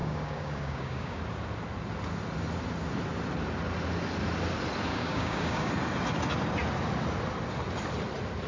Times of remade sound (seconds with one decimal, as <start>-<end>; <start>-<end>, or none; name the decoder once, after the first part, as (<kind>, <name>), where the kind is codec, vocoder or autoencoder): 0.0-1.2 (codec, DAC); 4.9-5.7